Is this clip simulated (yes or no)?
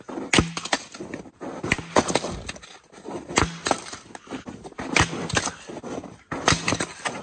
no